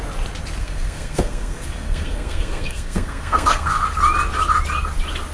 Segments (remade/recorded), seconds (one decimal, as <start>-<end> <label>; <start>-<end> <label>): 0.0-0.6 recorded; 0.6-3.8 remade; 3.8-5.3 recorded